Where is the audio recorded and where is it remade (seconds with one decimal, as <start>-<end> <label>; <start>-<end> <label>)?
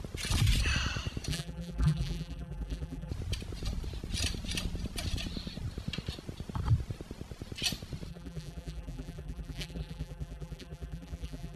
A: 0.0-1.3 recorded; 1.3-3.1 remade; 3.1-8.1 recorded; 8.1-11.6 remade